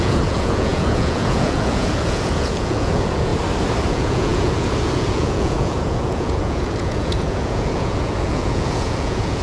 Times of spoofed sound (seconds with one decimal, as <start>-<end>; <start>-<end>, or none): 0.0-3.3; 3.9-9.4